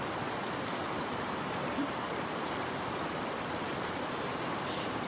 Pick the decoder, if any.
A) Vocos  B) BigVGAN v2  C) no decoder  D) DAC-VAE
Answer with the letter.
B